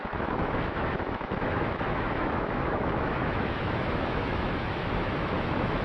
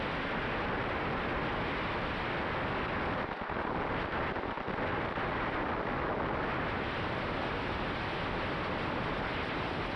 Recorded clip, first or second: second